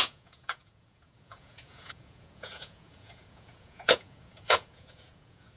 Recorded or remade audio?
remade